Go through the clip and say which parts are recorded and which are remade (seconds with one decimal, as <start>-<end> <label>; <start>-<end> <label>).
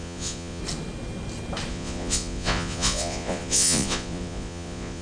0.0-0.6 remade; 0.6-1.7 recorded; 1.7-5.0 remade